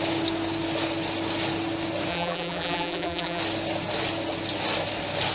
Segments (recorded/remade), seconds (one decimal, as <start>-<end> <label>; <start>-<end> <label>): 0.0-2.1 recorded; 2.1-3.4 remade; 3.4-5.3 recorded